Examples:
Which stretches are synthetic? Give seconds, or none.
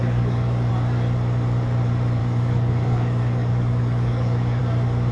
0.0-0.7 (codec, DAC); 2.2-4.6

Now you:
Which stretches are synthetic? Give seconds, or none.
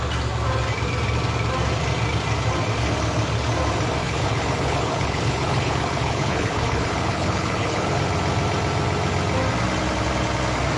4.0-8.0 (codec, HILCodec)